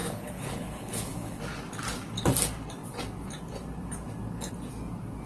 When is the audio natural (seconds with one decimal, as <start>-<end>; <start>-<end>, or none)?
1.4-5.3